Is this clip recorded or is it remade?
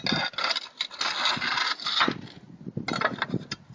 recorded